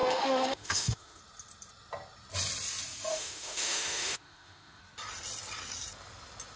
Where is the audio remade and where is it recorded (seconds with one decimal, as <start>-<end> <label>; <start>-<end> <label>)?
0.0-1.2 remade; 1.2-3.1 recorded; 3.1-4.8 remade; 4.8-6.6 recorded